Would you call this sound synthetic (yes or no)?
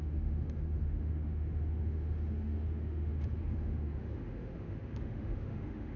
yes